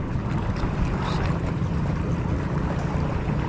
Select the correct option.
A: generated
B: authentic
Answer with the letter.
B